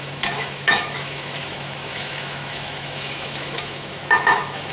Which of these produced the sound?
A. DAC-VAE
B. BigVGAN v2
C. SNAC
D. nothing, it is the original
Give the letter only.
A